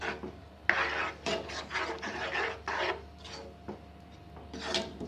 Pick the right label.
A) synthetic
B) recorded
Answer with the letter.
B